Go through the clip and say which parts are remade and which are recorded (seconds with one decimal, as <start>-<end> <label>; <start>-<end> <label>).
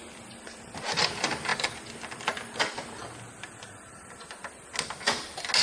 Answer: 0.0-5.6 recorded